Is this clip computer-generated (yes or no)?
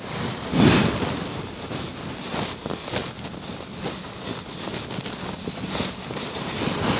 no